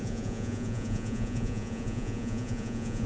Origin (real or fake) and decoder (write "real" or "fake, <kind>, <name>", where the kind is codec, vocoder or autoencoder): fake, vocoder, Vocos